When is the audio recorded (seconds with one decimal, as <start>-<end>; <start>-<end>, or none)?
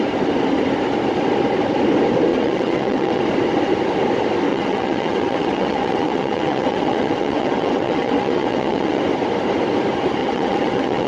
0.0-2.3; 3.2-4.5; 9.0-10.2